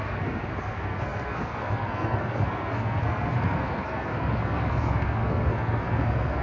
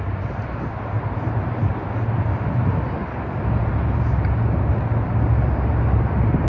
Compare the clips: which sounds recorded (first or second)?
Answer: second